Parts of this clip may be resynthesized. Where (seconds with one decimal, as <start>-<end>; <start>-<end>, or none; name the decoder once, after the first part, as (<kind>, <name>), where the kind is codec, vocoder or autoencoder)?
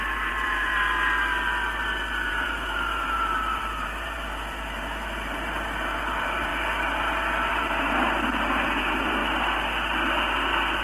0.0-0.7 (vocoder, BigVGAN v2); 2.3-6.5; 7.5-9.2